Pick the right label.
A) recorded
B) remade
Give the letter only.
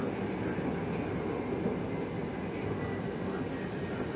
A